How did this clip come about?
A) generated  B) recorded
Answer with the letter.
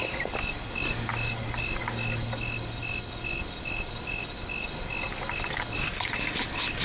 B